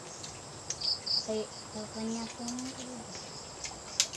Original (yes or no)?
yes